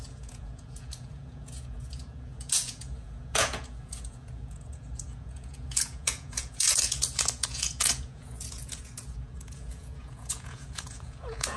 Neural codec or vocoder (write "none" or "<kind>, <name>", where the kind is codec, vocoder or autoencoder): vocoder, Vocos